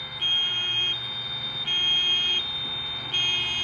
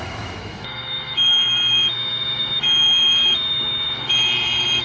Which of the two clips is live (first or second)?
first